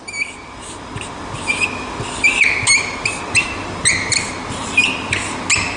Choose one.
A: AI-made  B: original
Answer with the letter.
B